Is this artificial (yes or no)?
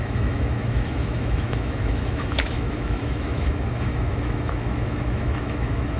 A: yes